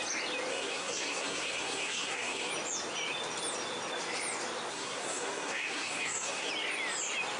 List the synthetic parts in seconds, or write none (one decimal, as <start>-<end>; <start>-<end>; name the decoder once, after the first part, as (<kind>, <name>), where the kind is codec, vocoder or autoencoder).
0.5-2.5 (codec, SNAC); 4.7-6.5